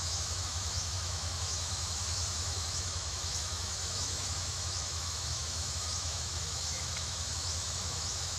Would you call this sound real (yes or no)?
no